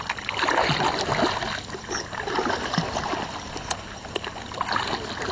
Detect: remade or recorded recorded